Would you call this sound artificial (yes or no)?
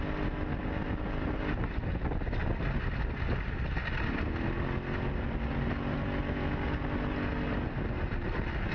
no